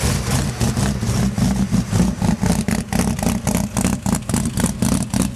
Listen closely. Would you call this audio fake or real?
real